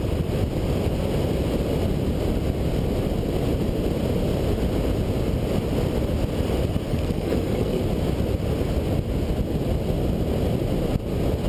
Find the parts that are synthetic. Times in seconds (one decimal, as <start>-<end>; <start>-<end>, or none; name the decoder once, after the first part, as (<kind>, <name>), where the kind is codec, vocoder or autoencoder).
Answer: 6.9-7.8 (codec, SNAC)